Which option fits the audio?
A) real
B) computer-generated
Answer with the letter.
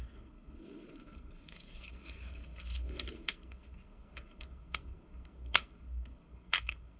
B